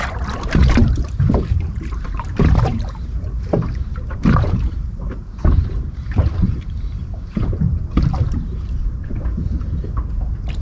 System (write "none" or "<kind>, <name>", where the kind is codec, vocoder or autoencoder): vocoder, BigVGAN v2